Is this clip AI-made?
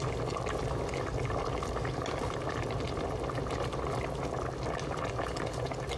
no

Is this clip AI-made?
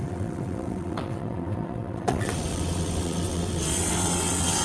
yes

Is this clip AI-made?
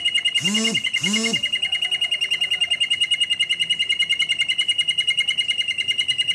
no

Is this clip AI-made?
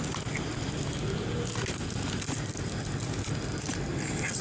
no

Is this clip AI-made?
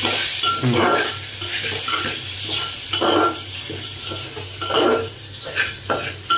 no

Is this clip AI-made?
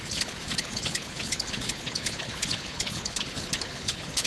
yes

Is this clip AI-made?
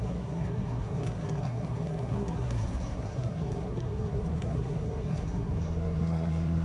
yes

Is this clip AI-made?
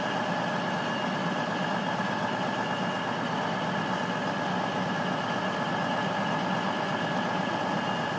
no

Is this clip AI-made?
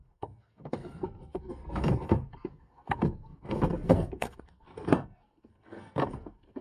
yes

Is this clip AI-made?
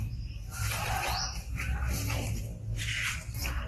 no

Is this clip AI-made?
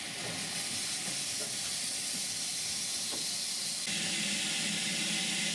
no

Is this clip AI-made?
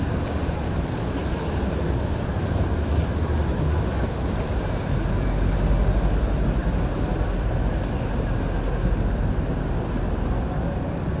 no